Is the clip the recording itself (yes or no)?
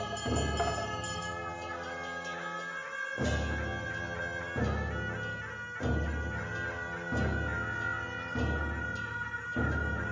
yes